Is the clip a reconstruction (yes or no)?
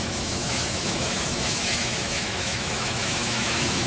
yes